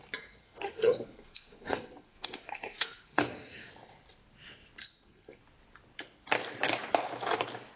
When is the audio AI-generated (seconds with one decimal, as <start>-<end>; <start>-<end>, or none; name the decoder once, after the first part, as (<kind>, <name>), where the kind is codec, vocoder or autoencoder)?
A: 0.4-3.7 (codec, SNAC); 4.8-5.4